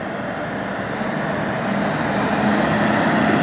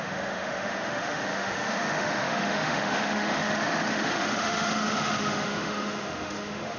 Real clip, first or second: first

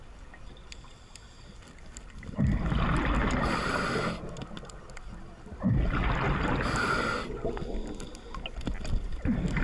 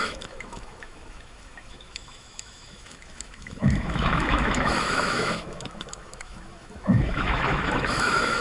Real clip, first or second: first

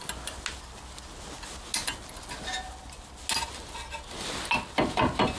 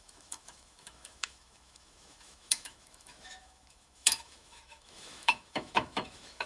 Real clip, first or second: first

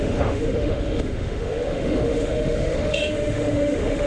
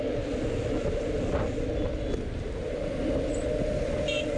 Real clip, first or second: second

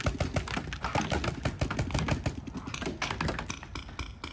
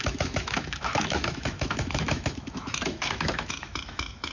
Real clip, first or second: first